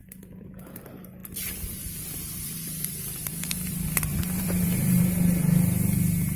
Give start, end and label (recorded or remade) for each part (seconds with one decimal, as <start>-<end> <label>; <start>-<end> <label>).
0.0-0.7 remade; 0.7-1.2 recorded; 1.2-5.0 remade; 5.0-6.4 recorded